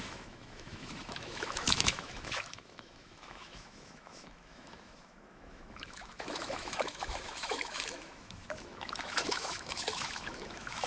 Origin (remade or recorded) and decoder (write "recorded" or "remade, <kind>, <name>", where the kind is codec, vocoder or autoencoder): remade, autoencoder, DAC-VAE